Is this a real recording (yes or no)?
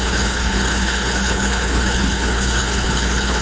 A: no